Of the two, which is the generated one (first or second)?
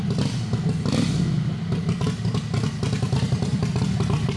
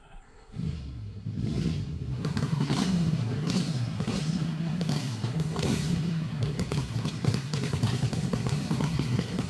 second